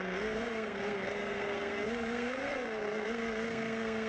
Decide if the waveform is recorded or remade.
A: remade